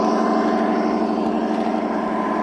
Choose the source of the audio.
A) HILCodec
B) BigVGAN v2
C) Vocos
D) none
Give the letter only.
D